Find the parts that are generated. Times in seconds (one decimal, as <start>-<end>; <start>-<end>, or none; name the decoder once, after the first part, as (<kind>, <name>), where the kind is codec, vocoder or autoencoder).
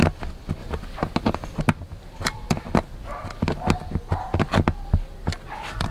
none